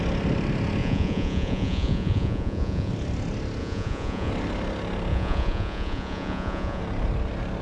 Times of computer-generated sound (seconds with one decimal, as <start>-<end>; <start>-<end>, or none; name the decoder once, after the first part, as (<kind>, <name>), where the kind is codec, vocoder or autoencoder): 0.8-2.9 (vocoder, Vocos); 3.6-4.3; 5.1-6.8